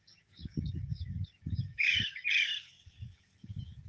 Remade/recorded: remade